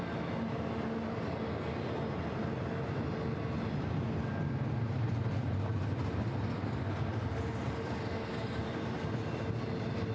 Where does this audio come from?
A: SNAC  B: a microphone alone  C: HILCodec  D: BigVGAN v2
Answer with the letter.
B